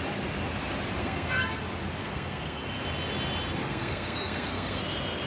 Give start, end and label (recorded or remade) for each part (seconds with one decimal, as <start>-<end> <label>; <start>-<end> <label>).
0.0-1.0 recorded; 1.0-1.6 remade; 1.6-2.0 recorded; 2.0-2.6 remade; 2.6-3.6 recorded; 3.6-4.8 remade; 4.8-5.3 recorded